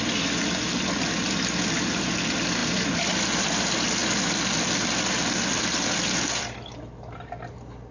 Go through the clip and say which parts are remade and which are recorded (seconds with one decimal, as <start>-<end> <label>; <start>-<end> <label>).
0.0-7.9 recorded